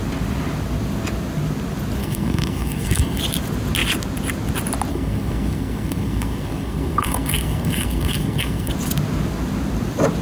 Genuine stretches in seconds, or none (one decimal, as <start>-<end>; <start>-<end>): 0.0-2.0; 3.2-4.9; 8.7-10.2